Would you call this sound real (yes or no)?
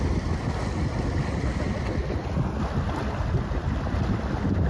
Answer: yes